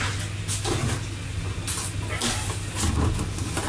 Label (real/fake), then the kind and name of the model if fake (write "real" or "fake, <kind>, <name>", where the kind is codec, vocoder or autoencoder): real